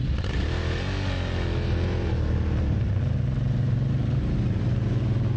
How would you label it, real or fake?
real